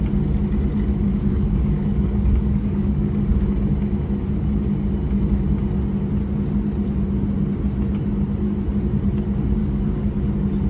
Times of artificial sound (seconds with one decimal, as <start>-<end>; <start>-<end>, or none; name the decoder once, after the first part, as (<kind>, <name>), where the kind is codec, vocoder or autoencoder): 1.1-3.3 (codec, DAC); 9.6-10.2